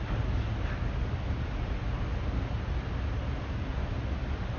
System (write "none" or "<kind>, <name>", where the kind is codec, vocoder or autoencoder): none